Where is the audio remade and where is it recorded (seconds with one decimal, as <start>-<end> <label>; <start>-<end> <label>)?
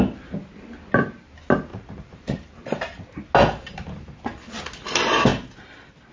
0.0-1.7 recorded; 1.7-3.0 remade; 3.0-6.1 recorded